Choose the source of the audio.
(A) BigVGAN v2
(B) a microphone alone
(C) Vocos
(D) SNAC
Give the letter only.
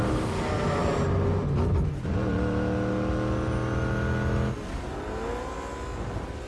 B